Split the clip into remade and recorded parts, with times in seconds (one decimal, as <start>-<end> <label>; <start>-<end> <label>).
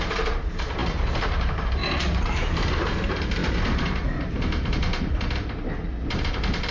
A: 0.0-4.9 remade; 4.9-6.1 recorded; 6.1-6.7 remade